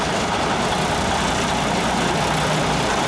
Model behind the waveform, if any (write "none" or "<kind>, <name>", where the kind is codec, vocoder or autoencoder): none